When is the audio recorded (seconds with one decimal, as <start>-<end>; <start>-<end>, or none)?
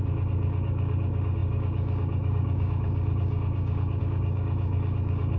none